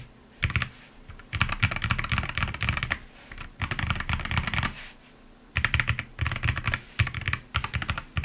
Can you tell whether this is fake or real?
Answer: real